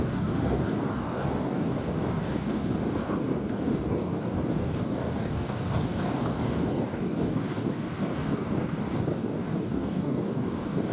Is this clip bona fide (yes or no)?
no